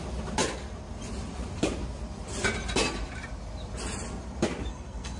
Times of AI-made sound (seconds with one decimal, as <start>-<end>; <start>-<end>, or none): 4.7-5.2